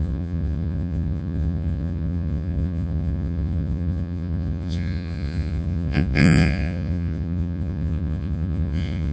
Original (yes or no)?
no